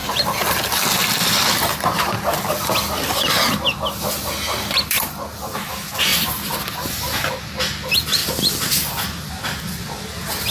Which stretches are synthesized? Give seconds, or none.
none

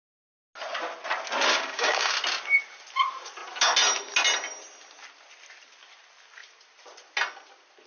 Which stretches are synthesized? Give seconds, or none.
1.5-2.1 (codec, DAC)